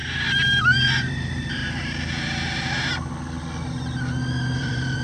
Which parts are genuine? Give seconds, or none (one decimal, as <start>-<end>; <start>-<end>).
0.0-0.6; 1.6-4.6